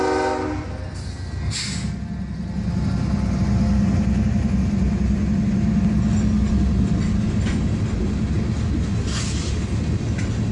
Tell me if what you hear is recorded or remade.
recorded